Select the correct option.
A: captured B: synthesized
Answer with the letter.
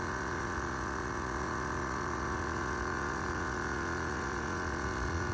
B